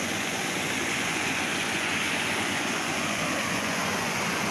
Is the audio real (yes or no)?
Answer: no